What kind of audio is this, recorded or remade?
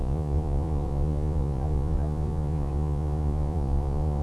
remade